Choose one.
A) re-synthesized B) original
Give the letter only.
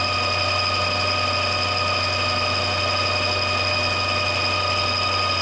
B